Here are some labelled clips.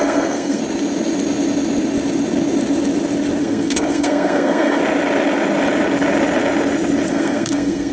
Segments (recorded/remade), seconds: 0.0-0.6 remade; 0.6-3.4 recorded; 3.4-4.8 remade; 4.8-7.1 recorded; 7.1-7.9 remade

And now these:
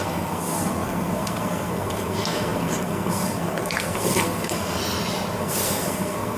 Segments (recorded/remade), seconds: 0.0-4.8 remade; 4.8-5.4 recorded; 5.4-6.4 remade

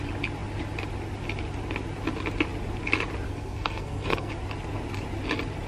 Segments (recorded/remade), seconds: 0.0-3.3 recorded; 3.3-4.3 remade; 4.3-5.7 recorded

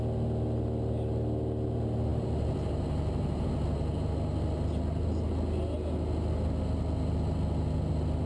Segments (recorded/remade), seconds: 0.0-8.3 recorded